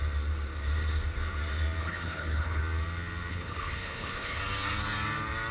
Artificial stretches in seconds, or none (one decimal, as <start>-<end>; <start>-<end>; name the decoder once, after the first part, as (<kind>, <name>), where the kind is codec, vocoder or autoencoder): 1.8-2.6 (codec, HILCodec); 3.3-4.4